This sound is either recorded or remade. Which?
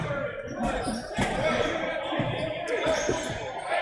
remade